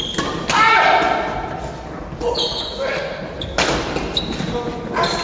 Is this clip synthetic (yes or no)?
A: no